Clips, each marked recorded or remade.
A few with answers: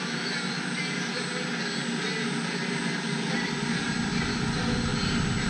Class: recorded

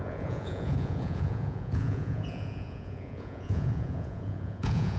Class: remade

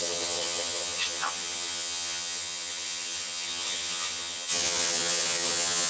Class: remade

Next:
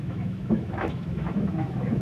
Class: remade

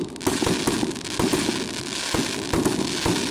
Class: recorded